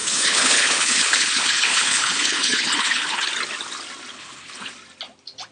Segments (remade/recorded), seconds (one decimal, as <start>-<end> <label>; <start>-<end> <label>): 0.0-3.3 remade; 3.3-4.1 recorded; 4.1-4.7 remade; 4.7-5.5 recorded